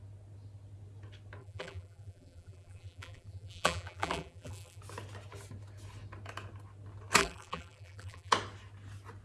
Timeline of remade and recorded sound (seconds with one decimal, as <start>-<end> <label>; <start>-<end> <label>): 0.0-1.4 recorded; 1.4-4.8 remade; 4.8-7.2 recorded; 7.2-8.3 remade; 8.3-9.2 recorded